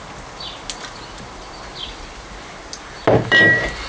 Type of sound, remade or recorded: recorded